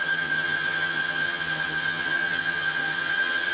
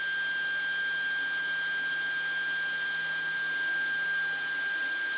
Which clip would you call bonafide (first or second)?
second